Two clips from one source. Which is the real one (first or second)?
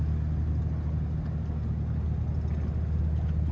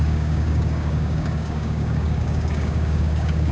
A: first